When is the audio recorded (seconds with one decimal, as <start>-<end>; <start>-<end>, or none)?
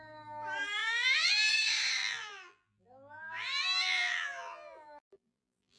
0.0-0.8; 1.5-2.0